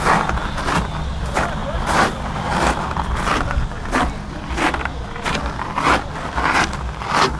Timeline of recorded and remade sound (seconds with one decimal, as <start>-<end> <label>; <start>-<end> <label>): 0.0-1.6 recorded; 1.6-2.2 remade; 2.2-7.4 recorded